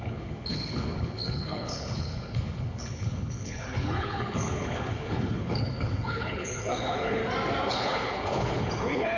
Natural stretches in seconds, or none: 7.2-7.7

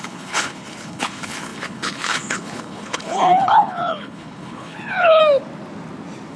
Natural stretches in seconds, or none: 5.2-6.4

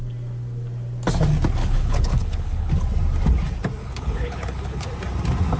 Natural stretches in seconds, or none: 0.0-1.6; 2.7-3.8; 4.9-5.6

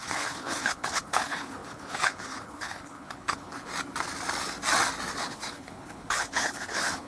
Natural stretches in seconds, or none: 3.7-5.2